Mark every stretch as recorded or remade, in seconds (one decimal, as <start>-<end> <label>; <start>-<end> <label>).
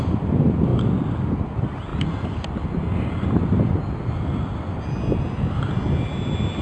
0.0-6.6 recorded